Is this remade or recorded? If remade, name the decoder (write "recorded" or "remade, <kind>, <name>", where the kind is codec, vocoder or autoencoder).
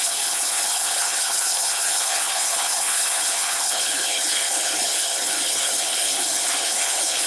remade, codec, HILCodec